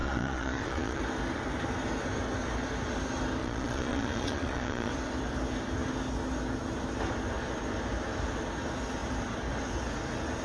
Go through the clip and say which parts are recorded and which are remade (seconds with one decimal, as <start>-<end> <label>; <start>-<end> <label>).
0.0-1.0 remade; 1.0-3.4 recorded; 3.4-4.9 remade; 4.9-10.4 recorded